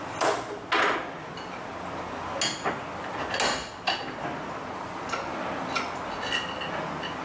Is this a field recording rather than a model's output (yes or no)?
yes